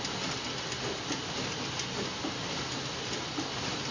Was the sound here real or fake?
real